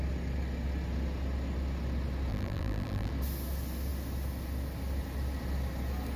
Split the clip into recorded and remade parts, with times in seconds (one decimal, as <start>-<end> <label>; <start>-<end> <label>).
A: 0.0-2.3 recorded; 2.3-3.1 remade; 3.1-6.2 recorded

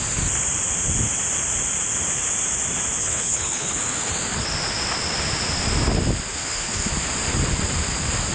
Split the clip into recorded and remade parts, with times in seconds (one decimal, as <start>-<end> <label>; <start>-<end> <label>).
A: 0.0-3.0 recorded; 3.0-4.1 remade; 4.1-6.3 recorded; 6.3-6.9 remade; 6.9-8.3 recorded

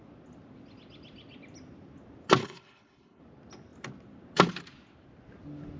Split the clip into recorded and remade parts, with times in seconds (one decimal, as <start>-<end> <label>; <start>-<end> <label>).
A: 0.0-2.4 recorded; 2.4-3.2 remade; 3.2-5.8 recorded

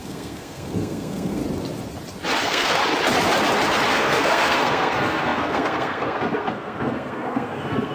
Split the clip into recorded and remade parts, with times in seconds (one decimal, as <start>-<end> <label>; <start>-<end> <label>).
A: 0.0-1.4 remade; 1.4-2.4 recorded; 2.4-2.8 remade; 2.8-3.9 recorded; 3.9-7.9 remade

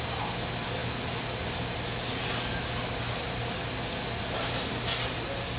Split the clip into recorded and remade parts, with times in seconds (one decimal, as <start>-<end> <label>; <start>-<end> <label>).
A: 0.0-5.6 recorded

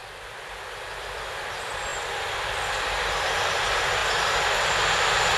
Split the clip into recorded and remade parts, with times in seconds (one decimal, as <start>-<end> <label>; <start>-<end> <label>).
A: 0.0-5.4 recorded

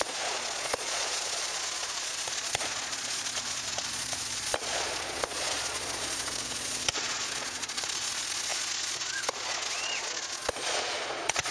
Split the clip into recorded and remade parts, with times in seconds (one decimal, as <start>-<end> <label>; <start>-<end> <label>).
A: 0.0-11.5 remade

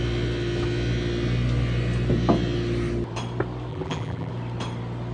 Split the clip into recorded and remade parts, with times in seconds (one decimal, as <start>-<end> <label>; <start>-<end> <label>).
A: 0.0-3.7 recorded; 3.7-4.3 remade; 4.3-5.1 recorded